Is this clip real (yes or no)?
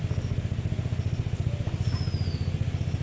yes